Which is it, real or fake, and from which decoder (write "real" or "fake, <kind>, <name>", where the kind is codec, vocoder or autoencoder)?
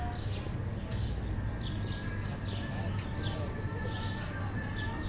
real